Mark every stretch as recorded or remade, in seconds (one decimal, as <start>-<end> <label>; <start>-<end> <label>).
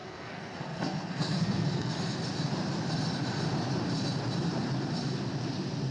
0.0-1.9 remade; 1.9-5.9 recorded